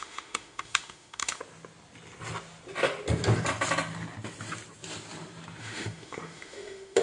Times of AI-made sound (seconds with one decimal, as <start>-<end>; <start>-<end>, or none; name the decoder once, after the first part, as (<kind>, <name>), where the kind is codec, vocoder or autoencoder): 0.0-1.4 (autoencoder, DAC-VAE); 5.6-7.0